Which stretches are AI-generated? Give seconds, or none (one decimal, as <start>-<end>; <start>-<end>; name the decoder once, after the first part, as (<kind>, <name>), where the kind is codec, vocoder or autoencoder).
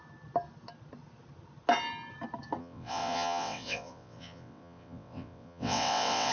2.6-6.3 (vocoder, WaveNeXt)